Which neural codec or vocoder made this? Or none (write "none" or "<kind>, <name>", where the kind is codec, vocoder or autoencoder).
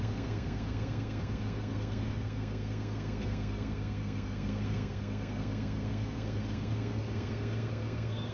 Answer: codec, SNAC